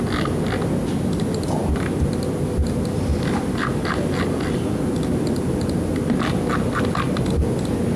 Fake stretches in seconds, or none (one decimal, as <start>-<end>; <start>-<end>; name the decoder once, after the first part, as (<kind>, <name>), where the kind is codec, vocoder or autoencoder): none